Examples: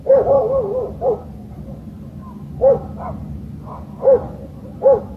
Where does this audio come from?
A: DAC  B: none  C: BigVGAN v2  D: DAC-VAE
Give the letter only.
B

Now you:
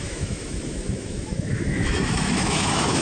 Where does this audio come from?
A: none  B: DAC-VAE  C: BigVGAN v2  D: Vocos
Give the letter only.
B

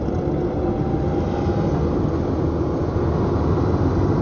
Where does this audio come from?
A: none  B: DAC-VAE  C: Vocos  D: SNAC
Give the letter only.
A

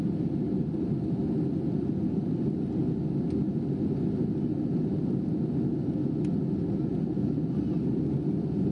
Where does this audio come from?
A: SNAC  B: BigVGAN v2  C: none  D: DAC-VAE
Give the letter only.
C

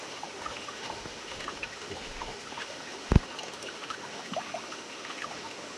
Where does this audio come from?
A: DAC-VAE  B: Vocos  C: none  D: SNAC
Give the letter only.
A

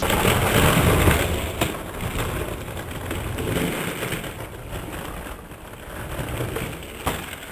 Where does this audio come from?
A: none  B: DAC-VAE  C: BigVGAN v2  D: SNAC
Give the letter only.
A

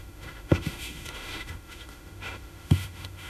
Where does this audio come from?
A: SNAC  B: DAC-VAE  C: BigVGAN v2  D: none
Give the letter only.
B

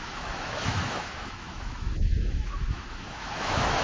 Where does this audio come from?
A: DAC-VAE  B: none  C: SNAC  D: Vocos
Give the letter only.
A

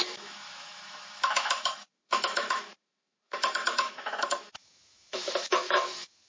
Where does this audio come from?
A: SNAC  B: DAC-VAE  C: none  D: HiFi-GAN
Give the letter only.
B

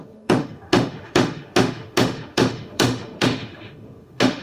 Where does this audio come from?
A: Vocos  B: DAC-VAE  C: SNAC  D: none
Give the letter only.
B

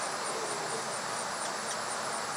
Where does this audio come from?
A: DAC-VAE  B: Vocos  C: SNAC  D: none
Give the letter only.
D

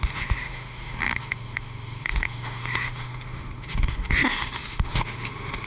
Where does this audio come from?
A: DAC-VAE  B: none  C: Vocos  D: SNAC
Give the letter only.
A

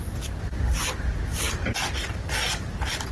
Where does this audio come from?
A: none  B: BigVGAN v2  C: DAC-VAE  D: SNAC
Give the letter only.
A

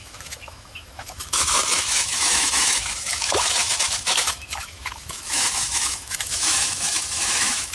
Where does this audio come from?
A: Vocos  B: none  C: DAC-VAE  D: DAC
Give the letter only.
C